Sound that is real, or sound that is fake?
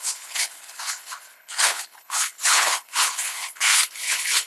fake